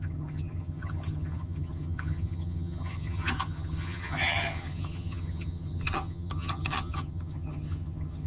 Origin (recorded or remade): remade